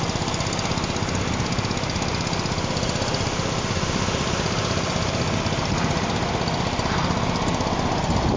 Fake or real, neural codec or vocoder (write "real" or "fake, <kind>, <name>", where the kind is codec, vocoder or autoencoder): real